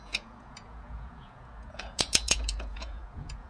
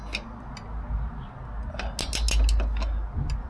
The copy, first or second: first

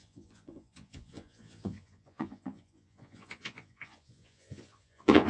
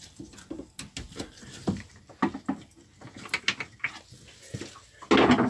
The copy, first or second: first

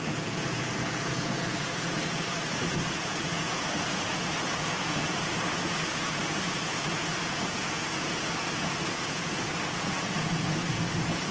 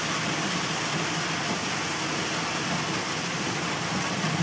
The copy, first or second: first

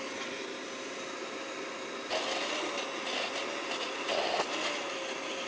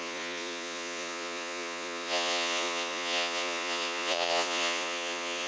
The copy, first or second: second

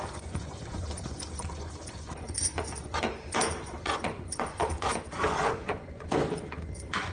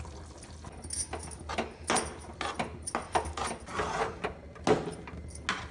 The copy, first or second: first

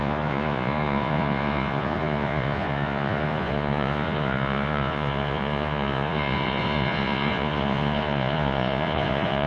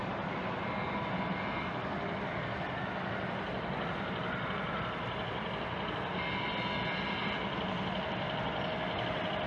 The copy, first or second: first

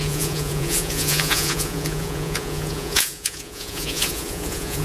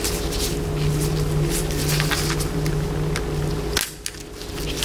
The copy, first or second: first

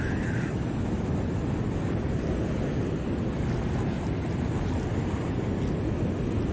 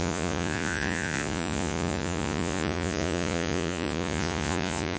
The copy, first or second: second